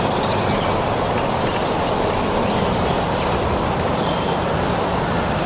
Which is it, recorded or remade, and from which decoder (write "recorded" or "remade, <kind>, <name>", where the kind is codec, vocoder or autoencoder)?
recorded